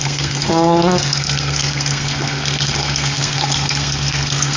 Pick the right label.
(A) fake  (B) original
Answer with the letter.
A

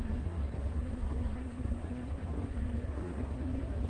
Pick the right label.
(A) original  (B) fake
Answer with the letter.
B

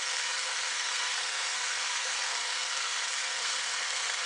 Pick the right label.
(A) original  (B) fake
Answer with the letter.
B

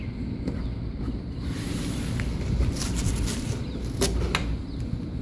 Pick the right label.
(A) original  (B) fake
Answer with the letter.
A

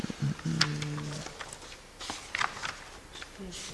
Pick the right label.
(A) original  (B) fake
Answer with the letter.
A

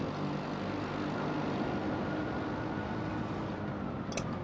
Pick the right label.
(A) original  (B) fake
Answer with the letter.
A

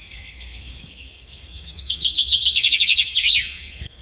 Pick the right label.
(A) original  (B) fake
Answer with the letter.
B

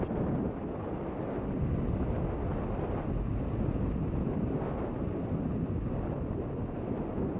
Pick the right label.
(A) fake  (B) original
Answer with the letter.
B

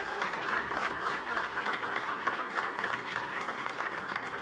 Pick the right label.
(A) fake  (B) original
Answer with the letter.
A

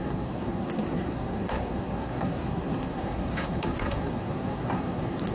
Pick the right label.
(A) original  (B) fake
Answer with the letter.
B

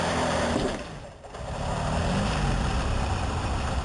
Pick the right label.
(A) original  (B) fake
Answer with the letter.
A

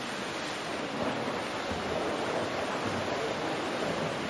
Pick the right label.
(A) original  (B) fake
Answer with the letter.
A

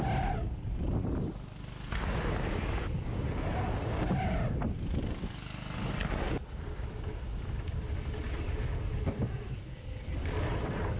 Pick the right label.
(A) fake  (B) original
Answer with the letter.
B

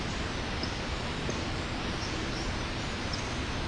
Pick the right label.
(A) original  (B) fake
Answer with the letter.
A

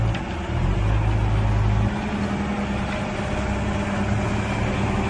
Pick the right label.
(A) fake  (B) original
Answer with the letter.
B